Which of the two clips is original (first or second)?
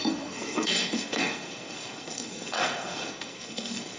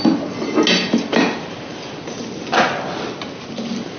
second